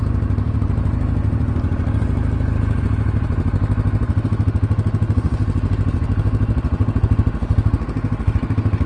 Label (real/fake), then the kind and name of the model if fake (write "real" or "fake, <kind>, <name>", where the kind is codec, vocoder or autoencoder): real